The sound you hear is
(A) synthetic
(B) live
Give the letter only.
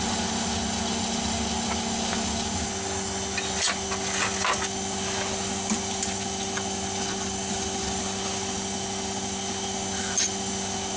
B